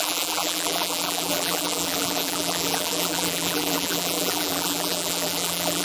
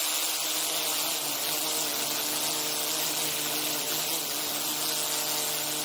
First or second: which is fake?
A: first